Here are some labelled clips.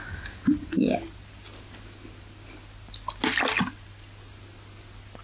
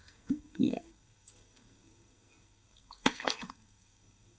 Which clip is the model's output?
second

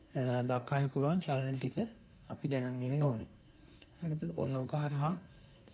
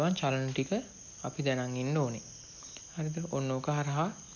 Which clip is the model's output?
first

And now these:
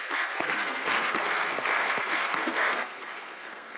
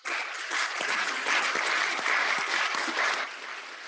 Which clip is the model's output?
first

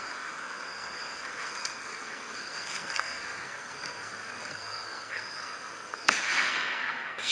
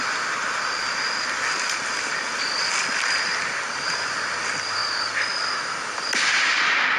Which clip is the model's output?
first